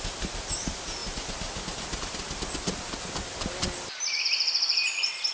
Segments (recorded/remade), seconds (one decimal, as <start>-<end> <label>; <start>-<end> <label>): 0.0-5.3 recorded